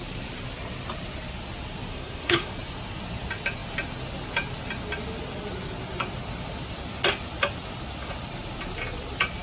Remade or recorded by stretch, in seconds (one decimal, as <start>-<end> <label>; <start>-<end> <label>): 0.0-1.9 recorded; 1.9-2.5 remade; 2.5-9.4 recorded